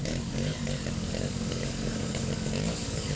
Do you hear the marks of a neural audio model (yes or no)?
yes